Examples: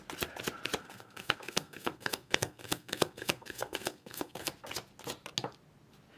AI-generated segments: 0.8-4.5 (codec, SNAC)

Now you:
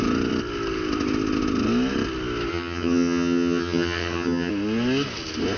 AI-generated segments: 2.5-4.5 (vocoder, HiFi-GAN)

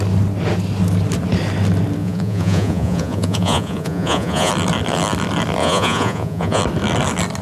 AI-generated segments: 2.0-4.5 (vocoder, Vocos); 5.6-6.6

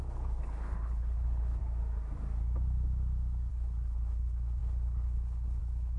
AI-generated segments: 0.0-1.6 (codec, HILCodec); 3.5-6.0

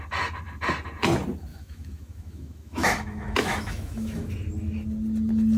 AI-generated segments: 1.5-4.3 (autoencoder, DAC-VAE)

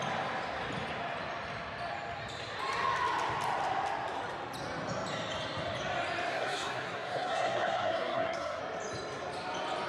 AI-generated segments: 6.3-8.6 (codec, SNAC)